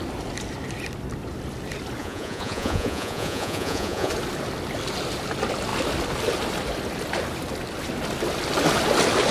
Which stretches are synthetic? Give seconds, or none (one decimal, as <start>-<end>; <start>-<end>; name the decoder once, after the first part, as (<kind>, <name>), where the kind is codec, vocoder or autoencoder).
2.0-4.1 (vocoder, Vocos)

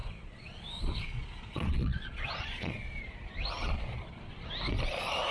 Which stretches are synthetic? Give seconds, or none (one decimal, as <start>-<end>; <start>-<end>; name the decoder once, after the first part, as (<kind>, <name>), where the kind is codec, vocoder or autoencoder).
0.0-3.0 (vocoder, Vocos); 3.6-4.4

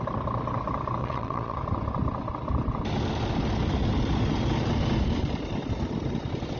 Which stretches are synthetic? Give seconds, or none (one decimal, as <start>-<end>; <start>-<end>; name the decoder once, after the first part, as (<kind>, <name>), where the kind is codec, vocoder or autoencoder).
1.0-1.6 (vocoder, Vocos)

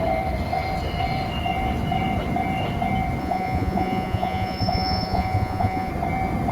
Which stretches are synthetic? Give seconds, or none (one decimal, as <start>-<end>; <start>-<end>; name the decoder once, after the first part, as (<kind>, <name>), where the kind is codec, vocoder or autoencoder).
3.2-5.9 (vocoder, Vocos)